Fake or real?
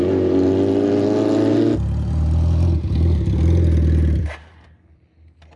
real